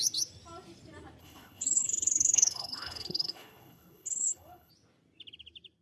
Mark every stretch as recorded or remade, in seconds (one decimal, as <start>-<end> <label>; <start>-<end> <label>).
0.0-1.2 recorded; 1.2-4.7 remade; 4.7-5.8 recorded